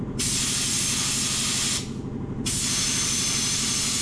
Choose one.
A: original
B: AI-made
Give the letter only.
A